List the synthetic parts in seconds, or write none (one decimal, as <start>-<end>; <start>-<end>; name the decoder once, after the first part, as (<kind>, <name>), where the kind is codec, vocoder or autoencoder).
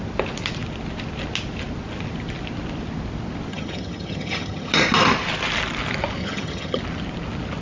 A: 3.5-4.7 (vocoder, HiFi-GAN); 6.2-6.8